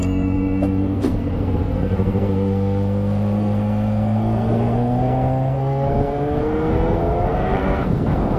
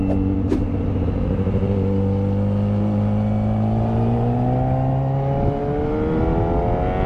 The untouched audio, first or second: second